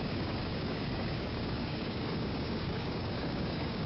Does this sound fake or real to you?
fake